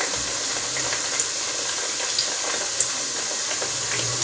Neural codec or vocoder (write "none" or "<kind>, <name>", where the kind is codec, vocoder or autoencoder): none